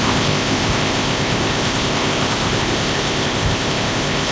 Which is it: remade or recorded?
remade